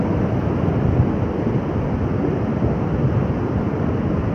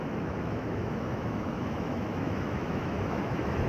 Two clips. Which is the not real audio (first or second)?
second